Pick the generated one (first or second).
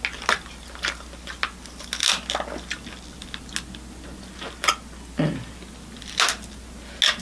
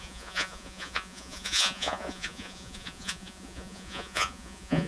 second